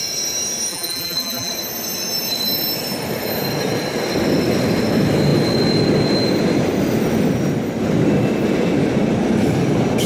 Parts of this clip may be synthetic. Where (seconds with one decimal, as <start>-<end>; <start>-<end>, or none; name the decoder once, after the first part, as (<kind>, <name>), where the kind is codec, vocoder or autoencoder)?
0.7-1.5 (vocoder, BigVGAN v2)